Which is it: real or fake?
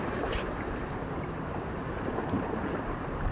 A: fake